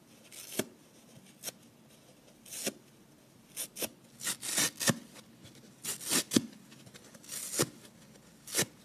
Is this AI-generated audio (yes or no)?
no